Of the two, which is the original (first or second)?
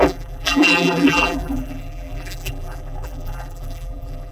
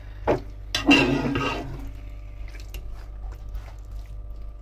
second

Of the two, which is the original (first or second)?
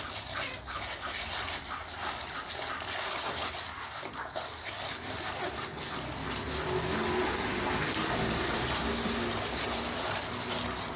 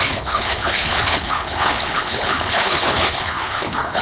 first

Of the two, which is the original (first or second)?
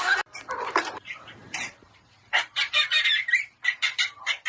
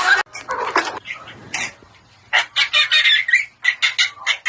second